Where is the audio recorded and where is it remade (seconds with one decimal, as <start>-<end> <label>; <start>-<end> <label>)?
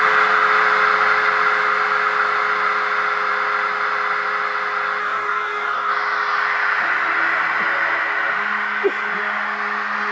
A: 0.0-5.0 recorded; 5.0-5.9 remade; 5.9-10.1 recorded